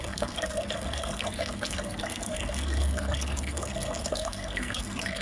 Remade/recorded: remade